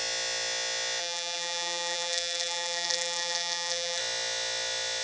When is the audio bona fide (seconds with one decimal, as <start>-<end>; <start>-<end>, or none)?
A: 0.0-1.0; 4.0-5.0